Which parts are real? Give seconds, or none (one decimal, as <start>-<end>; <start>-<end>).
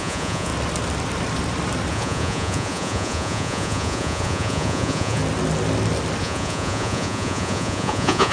0.5-1.9; 5.2-6.2